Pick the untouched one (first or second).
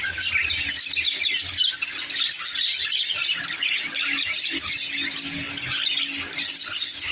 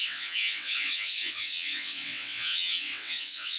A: first